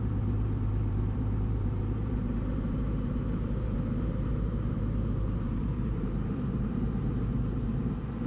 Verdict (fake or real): fake